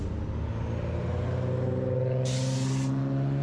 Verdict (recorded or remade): recorded